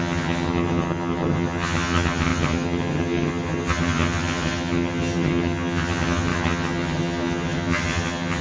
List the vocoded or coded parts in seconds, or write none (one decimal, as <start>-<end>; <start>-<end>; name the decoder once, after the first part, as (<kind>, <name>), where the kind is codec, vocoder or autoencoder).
0.0-8.4 (vocoder, HiFi-GAN)